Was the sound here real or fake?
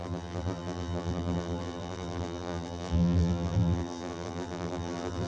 fake